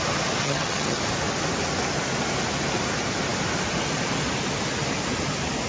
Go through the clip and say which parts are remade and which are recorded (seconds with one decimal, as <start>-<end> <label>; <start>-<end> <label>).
0.0-0.4 recorded; 0.4-1.0 remade; 1.0-5.7 recorded